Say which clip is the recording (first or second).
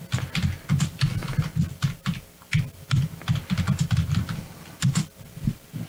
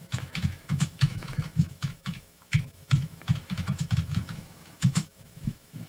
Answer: first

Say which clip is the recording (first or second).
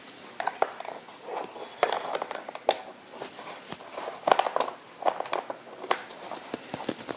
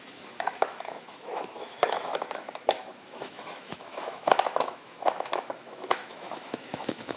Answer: first